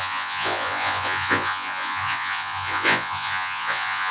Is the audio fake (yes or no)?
yes